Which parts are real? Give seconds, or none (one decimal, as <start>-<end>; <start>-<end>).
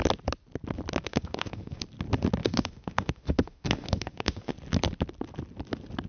0.0-1.0; 1.8-2.4; 4.5-6.1